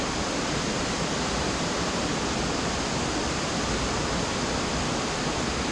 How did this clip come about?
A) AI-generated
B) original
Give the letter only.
B